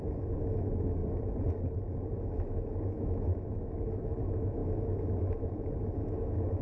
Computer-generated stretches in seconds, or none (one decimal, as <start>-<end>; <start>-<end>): 0.0-1.0; 2.2-6.6